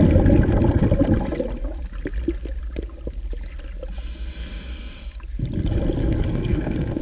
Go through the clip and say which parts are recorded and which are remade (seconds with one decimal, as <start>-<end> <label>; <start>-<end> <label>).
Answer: 0.0-6.0 recorded; 6.0-7.0 remade